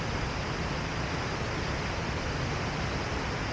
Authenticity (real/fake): real